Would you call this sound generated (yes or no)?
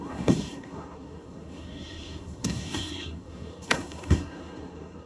yes